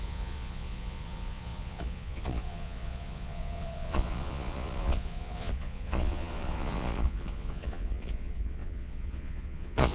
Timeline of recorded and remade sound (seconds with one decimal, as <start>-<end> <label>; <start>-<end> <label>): 0.0-9.9 remade